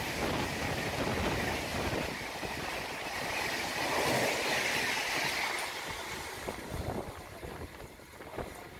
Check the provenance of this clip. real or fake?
real